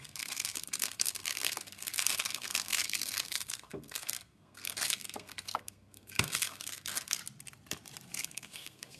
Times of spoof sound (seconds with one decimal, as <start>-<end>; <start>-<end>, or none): 0.0-7.2; 8.2-9.0